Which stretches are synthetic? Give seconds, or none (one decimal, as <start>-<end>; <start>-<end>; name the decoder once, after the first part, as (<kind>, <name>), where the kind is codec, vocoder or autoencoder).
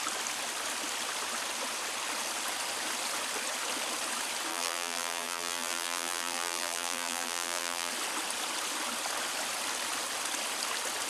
4.5-7.9 (vocoder, BigVGAN v2)